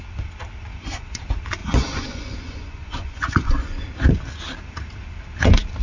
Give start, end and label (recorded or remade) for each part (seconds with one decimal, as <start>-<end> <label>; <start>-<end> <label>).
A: 0.0-0.7 recorded; 0.7-1.2 remade; 1.2-1.6 recorded; 1.6-3.8 remade; 3.8-5.8 recorded